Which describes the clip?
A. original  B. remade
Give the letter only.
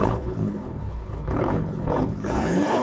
B